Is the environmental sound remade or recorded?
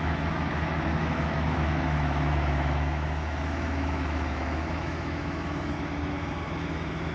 remade